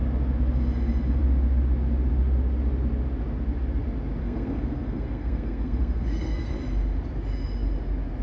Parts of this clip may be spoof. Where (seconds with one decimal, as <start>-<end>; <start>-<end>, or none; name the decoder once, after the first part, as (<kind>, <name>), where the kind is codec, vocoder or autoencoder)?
4.2-6.5 (codec, SNAC)